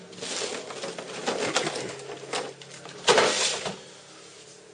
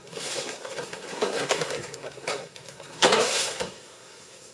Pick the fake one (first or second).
second